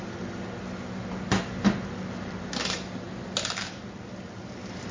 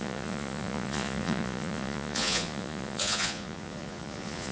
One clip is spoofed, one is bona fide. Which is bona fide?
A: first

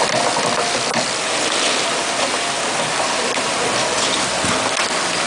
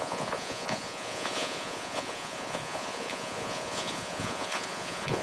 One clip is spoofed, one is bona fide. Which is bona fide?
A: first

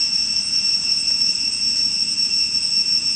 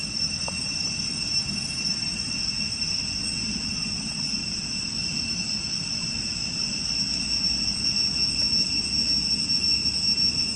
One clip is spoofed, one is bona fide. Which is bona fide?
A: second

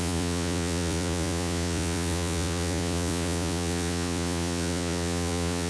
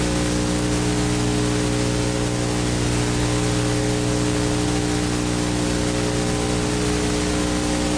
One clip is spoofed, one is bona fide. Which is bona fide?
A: second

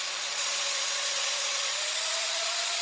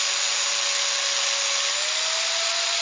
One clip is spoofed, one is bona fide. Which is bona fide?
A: second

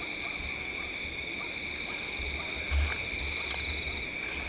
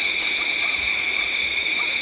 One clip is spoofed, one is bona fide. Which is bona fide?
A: first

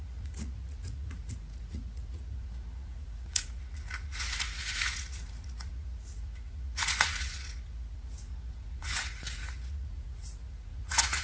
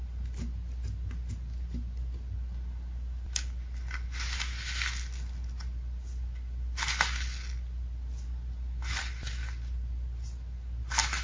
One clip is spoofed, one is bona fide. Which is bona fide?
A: second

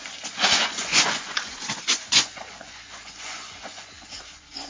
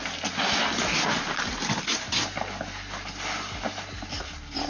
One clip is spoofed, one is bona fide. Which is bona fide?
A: second